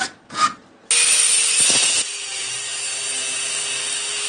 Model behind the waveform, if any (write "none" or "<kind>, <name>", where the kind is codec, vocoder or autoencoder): none